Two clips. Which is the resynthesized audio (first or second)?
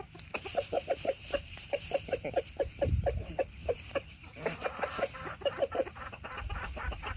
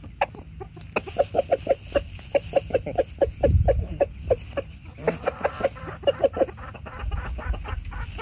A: first